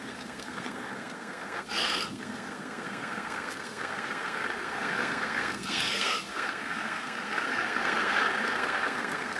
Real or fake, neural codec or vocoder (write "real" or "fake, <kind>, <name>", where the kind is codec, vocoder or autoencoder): fake, codec, SNAC